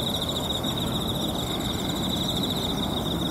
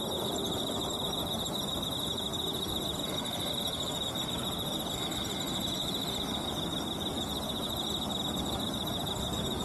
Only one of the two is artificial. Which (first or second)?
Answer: second